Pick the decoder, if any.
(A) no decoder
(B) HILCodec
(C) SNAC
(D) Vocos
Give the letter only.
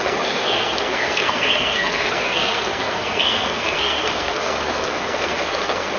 C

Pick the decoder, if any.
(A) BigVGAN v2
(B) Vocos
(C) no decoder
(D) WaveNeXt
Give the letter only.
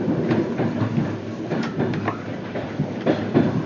C